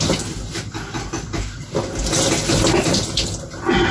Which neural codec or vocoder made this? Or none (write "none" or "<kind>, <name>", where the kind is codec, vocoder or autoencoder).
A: none